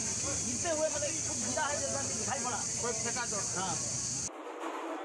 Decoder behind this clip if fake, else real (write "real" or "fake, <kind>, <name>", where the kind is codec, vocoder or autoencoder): real